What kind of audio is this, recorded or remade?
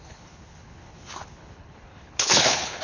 remade